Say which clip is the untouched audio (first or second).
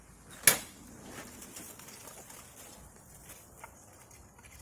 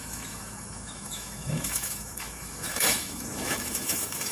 first